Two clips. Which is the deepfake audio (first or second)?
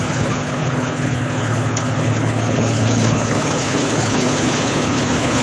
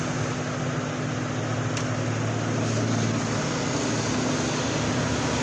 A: first